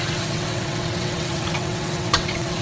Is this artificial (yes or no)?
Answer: yes